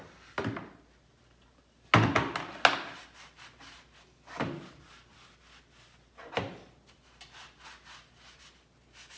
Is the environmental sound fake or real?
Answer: real